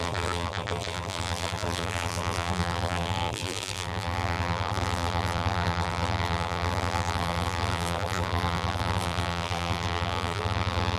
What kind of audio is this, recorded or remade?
remade